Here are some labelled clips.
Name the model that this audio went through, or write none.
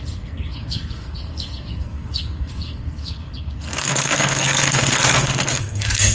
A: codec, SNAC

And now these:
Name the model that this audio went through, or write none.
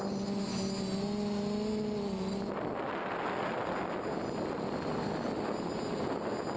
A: none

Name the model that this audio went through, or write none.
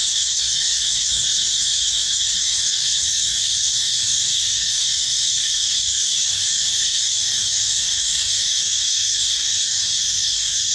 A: codec, DAC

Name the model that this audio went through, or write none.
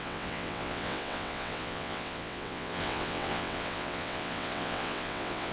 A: vocoder, WaveNeXt